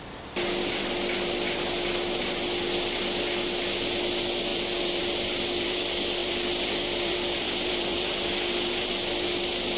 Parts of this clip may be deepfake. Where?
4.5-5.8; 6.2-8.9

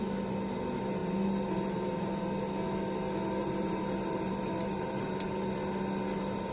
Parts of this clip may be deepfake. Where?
3.4-5.3

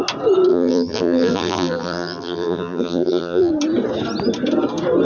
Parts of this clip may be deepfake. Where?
0.5-3.5

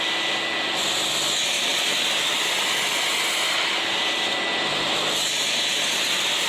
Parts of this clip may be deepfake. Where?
none

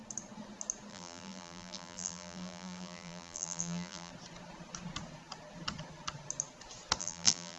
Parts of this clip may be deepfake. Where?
0.9-4.1; 7.0-7.6